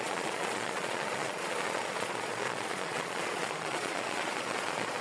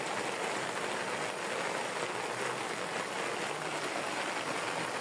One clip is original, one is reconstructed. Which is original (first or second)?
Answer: second